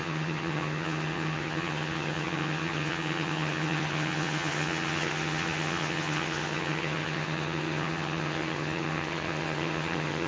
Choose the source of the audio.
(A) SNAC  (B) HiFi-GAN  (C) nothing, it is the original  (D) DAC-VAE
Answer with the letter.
B